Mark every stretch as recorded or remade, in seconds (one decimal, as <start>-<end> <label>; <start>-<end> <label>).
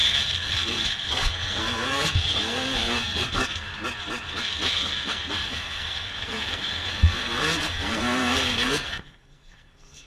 0.0-3.7 remade; 3.7-4.3 recorded; 4.3-10.1 remade